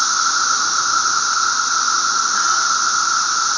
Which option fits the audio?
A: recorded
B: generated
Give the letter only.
A